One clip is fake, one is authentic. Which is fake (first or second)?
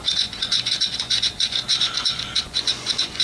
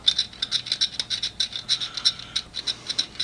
first